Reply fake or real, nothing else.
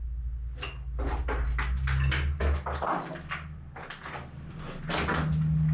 real